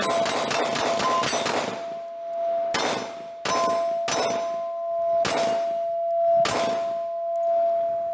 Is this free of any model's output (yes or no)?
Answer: yes